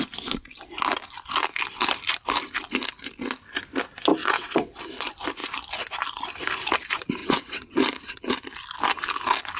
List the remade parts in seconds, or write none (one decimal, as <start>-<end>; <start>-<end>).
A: 4.2-4.8; 7.2-8.2